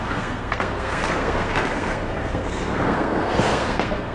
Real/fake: fake